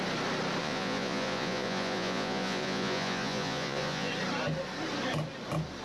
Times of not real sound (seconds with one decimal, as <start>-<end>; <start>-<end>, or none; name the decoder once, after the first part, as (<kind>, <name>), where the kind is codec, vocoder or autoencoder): 0.6-4.1 (vocoder, Vocos)